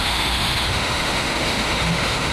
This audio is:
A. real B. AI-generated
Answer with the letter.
B